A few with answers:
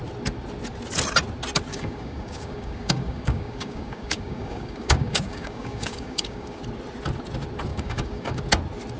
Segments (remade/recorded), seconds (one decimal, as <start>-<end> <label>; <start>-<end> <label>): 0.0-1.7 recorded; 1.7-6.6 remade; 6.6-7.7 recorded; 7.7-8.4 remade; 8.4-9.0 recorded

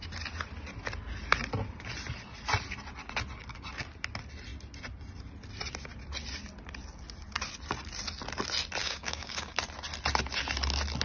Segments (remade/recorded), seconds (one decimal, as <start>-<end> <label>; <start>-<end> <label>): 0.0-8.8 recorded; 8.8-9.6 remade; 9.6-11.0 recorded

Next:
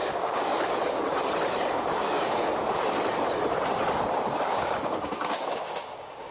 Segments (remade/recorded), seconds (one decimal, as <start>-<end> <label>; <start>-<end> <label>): 0.0-0.5 remade; 0.5-1.6 recorded; 1.6-2.5 remade; 2.5-4.3 recorded; 4.3-6.3 remade

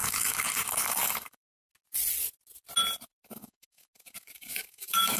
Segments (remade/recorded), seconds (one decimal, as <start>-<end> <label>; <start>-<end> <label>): 0.0-1.7 remade; 1.7-3.0 recorded; 3.0-5.2 remade

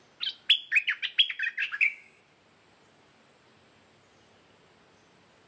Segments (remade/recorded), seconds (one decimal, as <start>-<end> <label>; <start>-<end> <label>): 0.0-1.6 recorded; 1.6-2.2 remade; 2.2-5.5 recorded

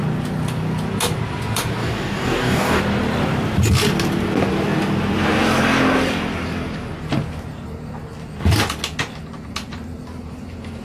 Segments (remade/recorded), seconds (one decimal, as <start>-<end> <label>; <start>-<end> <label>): 0.0-1.8 recorded; 1.8-2.8 remade; 2.8-10.8 recorded